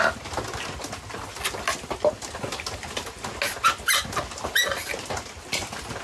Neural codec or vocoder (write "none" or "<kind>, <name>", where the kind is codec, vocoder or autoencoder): none